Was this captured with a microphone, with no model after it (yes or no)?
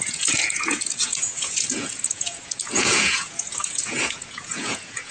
no